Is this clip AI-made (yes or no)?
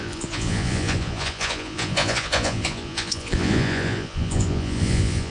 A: yes